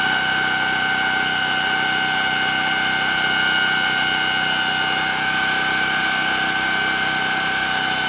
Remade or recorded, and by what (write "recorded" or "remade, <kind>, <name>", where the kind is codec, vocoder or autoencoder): recorded